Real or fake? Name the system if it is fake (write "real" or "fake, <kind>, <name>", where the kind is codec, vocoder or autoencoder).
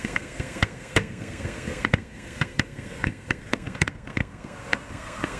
fake, codec, SNAC